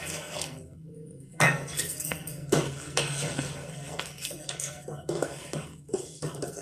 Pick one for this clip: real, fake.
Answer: fake